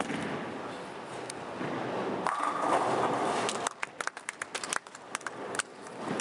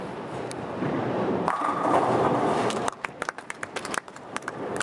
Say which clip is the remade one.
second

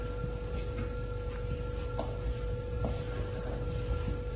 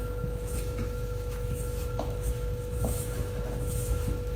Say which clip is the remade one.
second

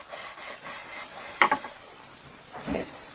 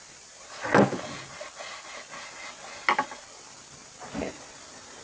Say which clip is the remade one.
first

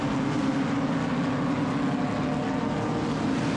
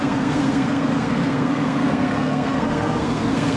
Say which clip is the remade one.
second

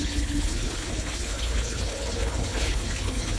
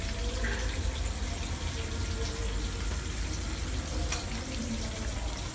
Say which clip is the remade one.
first